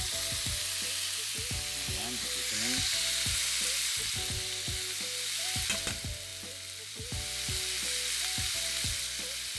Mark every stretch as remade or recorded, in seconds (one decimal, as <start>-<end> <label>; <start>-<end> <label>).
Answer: 0.0-9.6 recorded